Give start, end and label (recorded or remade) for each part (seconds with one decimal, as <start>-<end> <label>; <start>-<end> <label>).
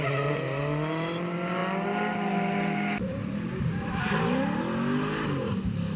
0.0-6.0 recorded